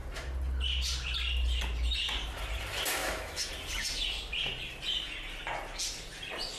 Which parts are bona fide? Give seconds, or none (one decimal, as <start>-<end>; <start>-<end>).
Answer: 0.0-3.0; 3.5-6.6